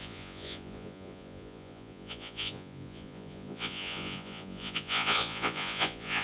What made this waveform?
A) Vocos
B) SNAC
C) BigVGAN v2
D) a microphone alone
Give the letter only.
A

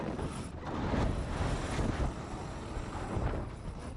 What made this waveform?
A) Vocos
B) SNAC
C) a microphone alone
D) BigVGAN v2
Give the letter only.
C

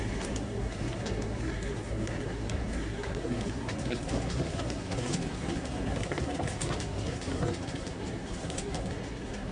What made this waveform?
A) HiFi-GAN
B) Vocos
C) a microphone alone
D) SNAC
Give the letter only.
D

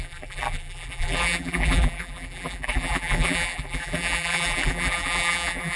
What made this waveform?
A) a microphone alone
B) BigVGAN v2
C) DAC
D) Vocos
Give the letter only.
B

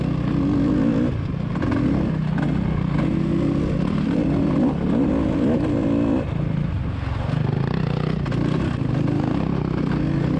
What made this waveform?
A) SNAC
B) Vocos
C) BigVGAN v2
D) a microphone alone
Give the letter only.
D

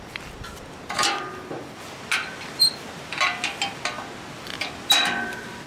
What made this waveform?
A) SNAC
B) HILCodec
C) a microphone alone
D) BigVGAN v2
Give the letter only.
C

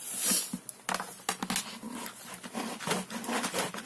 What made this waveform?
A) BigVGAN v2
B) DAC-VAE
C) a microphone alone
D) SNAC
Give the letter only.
C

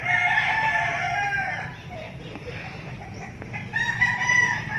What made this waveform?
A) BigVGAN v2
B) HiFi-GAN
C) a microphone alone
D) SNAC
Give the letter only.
A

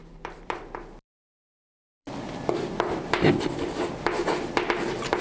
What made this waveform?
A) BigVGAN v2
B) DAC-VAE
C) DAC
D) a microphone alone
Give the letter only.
A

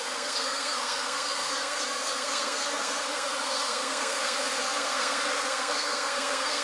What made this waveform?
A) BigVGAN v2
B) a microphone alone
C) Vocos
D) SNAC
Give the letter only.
D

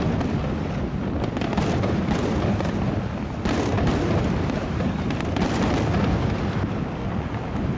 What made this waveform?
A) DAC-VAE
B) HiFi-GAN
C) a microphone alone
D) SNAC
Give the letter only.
C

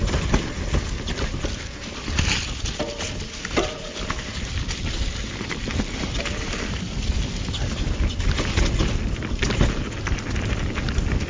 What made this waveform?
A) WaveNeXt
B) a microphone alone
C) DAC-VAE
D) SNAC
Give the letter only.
B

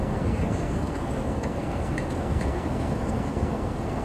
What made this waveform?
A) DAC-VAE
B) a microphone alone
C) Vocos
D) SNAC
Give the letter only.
D